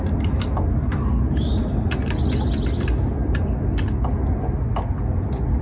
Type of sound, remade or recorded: recorded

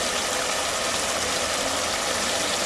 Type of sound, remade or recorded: recorded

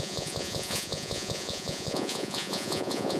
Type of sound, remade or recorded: remade